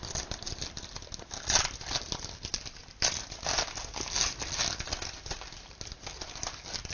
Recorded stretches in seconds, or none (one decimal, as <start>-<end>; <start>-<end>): 0.0-6.9